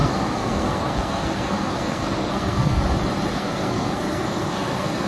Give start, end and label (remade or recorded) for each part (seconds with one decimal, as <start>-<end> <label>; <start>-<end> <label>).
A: 0.0-2.8 remade; 2.8-3.3 recorded; 3.3-5.1 remade